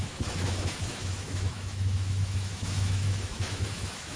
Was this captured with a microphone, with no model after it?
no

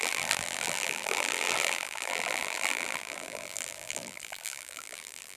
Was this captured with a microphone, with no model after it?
no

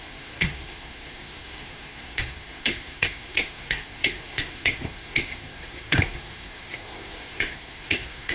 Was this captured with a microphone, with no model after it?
no